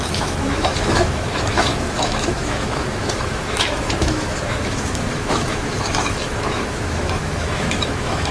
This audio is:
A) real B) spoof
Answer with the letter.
B